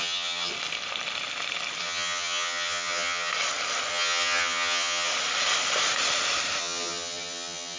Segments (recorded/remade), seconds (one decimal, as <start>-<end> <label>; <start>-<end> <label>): 0.0-0.5 remade; 0.5-1.8 recorded; 1.8-3.3 remade; 3.3-3.9 recorded; 3.9-5.1 remade; 5.1-6.6 recorded; 6.6-7.8 remade